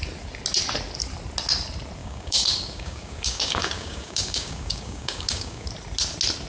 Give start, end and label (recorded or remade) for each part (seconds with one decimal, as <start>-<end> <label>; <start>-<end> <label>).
0.0-2.0 recorded; 2.0-5.7 remade; 5.7-6.5 recorded